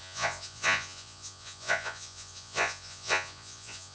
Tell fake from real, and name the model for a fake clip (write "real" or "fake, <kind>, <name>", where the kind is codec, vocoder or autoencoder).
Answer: fake, vocoder, Vocos